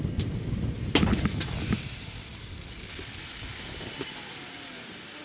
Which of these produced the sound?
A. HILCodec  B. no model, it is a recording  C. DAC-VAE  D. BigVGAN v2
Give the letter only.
B